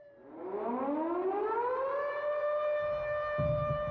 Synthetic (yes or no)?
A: no